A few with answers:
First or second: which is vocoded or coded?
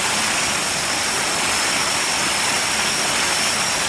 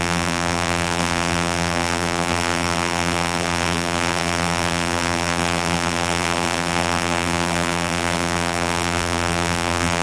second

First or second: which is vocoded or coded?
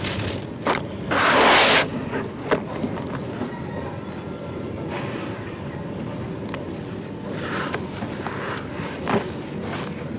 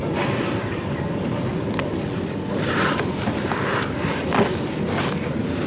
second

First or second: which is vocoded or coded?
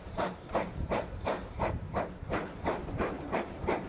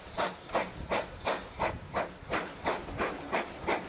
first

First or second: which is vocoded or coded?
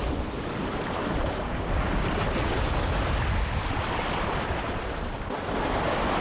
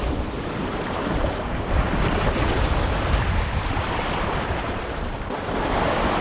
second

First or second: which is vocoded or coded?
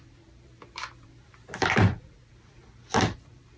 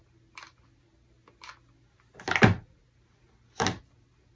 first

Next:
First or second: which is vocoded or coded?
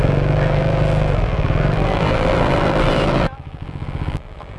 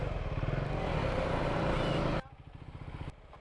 first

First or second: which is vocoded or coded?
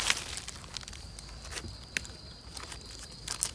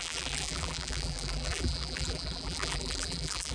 second